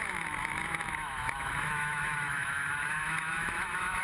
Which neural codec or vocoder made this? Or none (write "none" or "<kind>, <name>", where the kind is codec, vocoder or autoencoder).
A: autoencoder, DAC-VAE